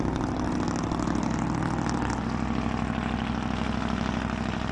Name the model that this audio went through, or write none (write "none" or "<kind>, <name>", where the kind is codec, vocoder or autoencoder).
none